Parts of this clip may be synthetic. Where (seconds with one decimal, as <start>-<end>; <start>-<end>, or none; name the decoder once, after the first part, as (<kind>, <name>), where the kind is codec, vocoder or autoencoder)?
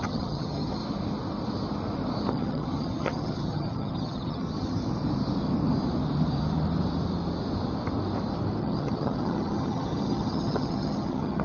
0.0-0.8 (vocoder, HiFi-GAN); 2.3-4.8; 8.6-11.4